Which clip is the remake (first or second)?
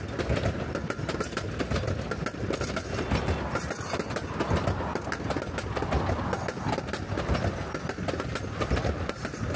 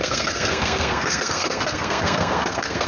second